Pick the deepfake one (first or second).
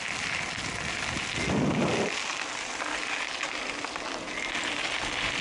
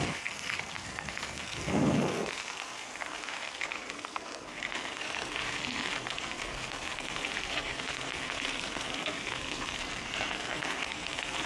second